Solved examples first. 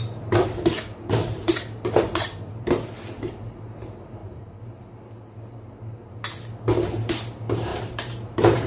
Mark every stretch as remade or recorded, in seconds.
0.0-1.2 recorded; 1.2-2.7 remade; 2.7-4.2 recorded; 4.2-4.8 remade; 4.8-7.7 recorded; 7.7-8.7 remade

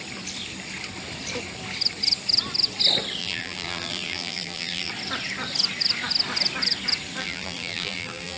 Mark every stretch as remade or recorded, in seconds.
0.0-3.2 recorded; 3.2-4.9 remade; 4.9-7.2 recorded; 7.2-8.4 remade

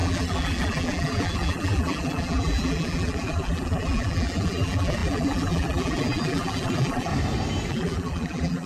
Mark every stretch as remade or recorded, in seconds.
0.0-7.1 remade; 7.1-7.7 recorded; 7.7-8.7 remade